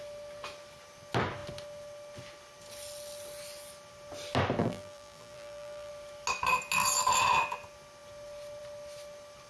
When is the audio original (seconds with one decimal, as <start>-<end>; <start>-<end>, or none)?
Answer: 0.0-4.6; 5.9-9.5